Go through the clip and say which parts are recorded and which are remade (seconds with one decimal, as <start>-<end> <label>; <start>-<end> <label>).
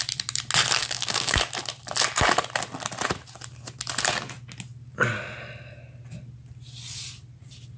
0.0-0.8 recorded; 0.8-1.5 remade; 1.5-7.8 recorded